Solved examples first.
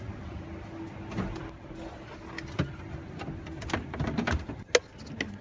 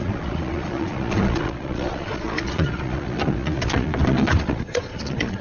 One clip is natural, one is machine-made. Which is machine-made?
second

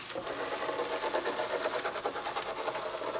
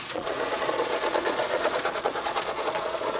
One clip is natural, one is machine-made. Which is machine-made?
second